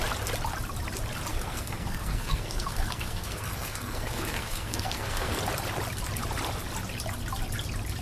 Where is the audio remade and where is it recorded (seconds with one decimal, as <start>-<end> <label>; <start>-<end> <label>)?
0.0-1.3 recorded; 1.3-5.4 remade; 5.4-8.0 recorded